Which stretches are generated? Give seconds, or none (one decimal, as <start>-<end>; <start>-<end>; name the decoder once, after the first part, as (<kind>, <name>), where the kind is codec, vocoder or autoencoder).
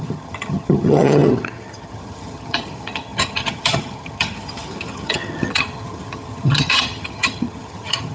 0.0-8.1 (vocoder, HiFi-GAN)